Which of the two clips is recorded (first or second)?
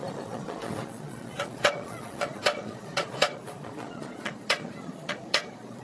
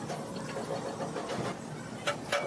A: second